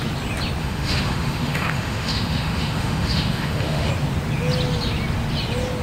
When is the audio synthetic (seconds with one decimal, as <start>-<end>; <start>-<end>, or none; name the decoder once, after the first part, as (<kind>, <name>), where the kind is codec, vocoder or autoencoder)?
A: 0.6-3.9 (autoencoder, DAC-VAE)